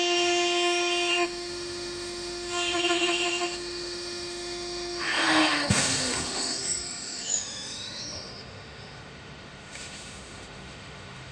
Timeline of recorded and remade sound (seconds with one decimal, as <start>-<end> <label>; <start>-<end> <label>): 0.0-11.3 remade